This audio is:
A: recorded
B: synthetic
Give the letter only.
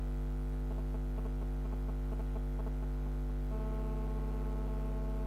A